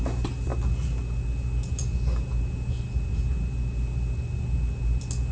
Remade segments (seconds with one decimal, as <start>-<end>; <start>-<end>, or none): none